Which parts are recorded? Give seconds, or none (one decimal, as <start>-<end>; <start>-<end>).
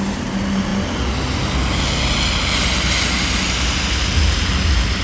0.0-5.0